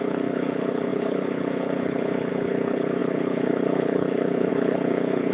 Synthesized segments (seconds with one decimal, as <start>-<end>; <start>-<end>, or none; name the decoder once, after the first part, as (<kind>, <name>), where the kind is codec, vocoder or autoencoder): 0.0-5.3 (codec, HILCodec)